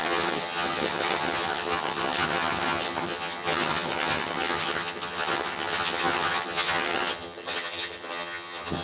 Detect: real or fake fake